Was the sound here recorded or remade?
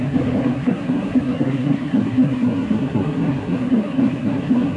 remade